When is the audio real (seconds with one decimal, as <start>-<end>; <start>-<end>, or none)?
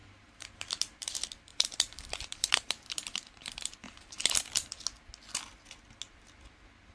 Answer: 1.1-1.5; 4.2-6.9